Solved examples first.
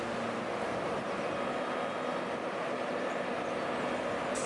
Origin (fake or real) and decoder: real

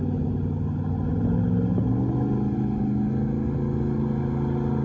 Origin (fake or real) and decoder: real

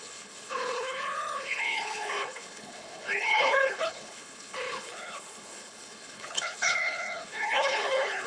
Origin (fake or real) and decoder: fake, codec, HILCodec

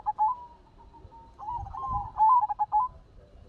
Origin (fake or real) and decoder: real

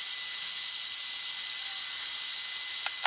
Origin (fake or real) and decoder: real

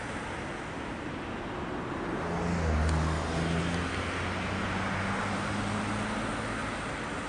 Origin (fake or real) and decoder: real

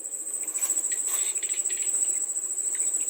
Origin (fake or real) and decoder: fake, vocoder, BigVGAN v2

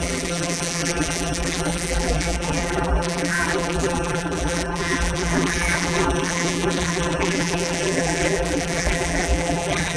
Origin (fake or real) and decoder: fake, vocoder, BigVGAN v2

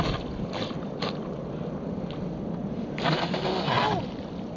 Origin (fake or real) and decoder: real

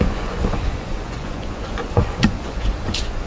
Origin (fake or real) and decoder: fake, vocoder, Vocos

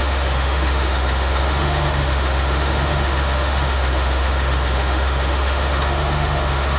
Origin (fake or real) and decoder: fake, autoencoder, DAC-VAE